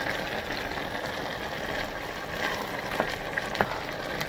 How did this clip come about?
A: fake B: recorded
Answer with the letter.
B